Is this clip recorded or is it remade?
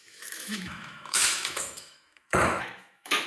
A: remade